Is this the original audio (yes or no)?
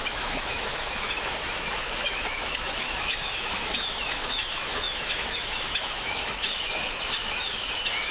no